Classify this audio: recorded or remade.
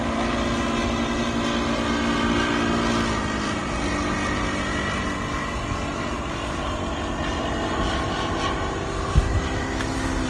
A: recorded